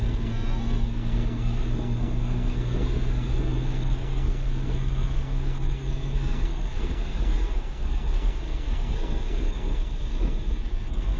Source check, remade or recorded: remade